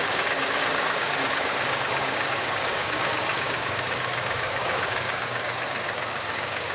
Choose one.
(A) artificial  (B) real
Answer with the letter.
A